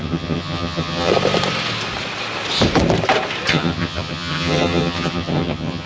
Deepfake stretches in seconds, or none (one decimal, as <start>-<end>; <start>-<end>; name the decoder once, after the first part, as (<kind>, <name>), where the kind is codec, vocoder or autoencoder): 0.0-1.1 (vocoder, HiFi-GAN); 3.5-5.9